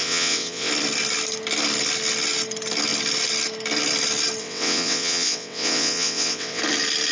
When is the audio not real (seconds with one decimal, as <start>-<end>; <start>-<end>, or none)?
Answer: 0.0-0.7; 4.4-6.6